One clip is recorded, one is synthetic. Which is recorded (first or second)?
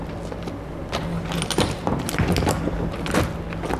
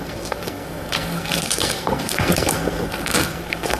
first